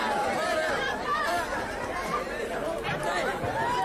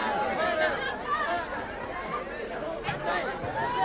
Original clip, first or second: second